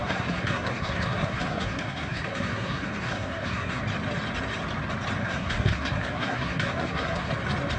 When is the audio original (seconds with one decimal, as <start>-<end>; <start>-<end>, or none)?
3.8-5.2; 7.3-7.8